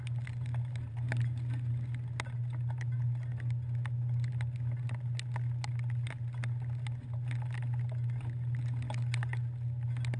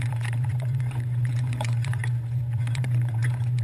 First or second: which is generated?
second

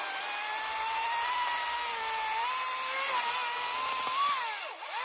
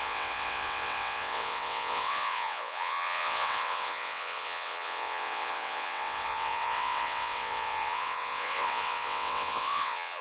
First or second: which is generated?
second